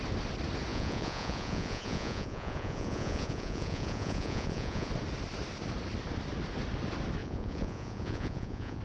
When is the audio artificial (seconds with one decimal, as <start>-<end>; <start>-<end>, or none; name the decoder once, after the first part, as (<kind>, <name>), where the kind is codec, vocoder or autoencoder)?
0.7-4.9 (vocoder, Vocos); 7.2-8.8